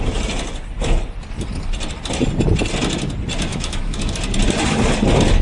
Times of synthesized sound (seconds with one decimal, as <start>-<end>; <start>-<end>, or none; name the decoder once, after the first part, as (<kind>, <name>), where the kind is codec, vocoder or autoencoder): 3.5-4.1 (autoencoder, DAC-VAE)